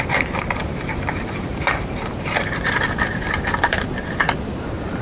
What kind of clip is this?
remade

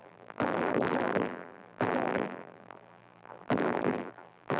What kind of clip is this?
remade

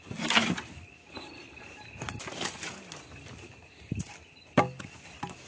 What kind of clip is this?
recorded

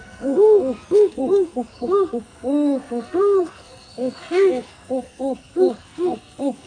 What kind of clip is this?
remade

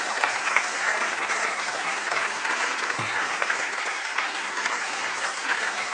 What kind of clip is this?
remade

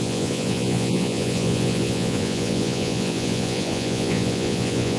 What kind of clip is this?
remade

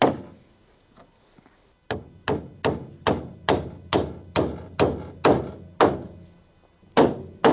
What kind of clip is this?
recorded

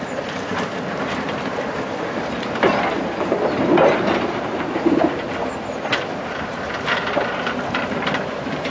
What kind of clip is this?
remade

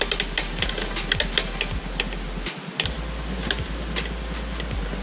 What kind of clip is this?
recorded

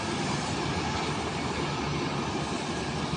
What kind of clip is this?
recorded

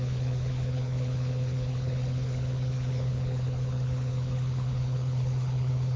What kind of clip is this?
remade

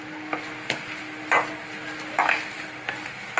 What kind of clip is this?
recorded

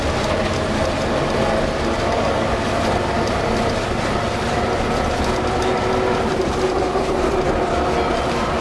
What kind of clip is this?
recorded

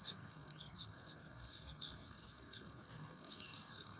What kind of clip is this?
remade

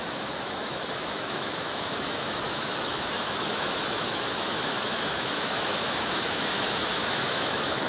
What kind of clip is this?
remade